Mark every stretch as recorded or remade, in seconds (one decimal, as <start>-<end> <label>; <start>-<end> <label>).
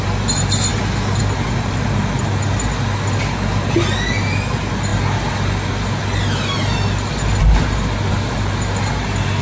0.0-9.4 recorded